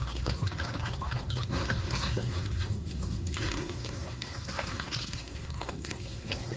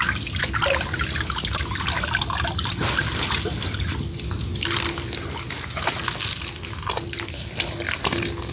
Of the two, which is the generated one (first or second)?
first